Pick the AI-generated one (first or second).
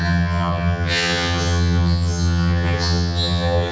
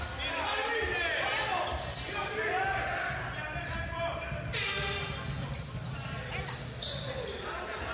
first